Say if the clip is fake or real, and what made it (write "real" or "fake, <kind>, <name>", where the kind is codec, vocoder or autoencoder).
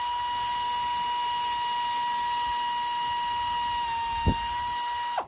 real